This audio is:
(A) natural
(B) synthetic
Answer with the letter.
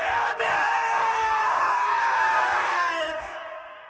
B